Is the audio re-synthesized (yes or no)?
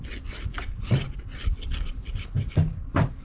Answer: no